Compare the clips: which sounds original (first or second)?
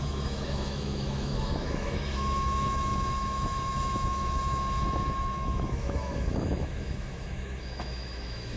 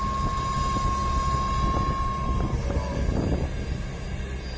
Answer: second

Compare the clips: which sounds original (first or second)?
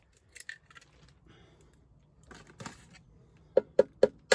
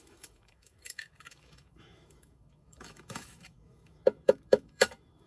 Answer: first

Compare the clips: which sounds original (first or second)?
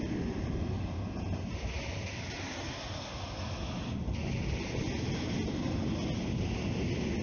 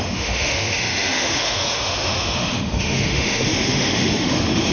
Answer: first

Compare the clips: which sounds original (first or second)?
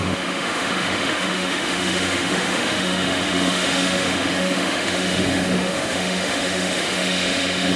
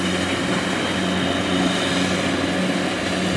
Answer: second